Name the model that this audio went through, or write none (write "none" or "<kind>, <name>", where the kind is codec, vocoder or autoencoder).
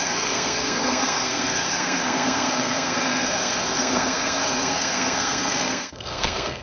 codec, SNAC